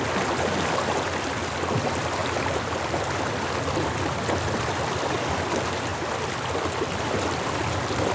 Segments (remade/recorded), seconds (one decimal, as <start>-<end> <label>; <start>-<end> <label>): 0.0-5.9 recorded; 5.9-7.5 remade; 7.5-8.1 recorded